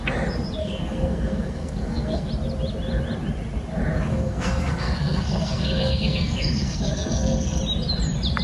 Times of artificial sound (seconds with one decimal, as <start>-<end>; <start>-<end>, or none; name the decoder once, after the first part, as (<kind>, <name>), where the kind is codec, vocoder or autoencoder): 0.6-2.3 (codec, SNAC); 4.1-7.6